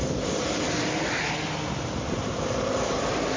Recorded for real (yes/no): yes